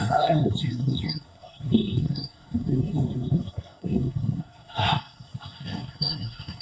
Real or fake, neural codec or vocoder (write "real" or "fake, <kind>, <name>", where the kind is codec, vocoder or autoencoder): fake, codec, SNAC